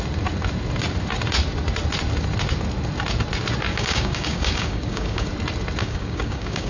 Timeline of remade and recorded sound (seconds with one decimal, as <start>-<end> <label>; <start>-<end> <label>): 0.0-3.7 recorded; 3.7-5.3 remade; 5.3-5.8 recorded; 5.8-6.7 remade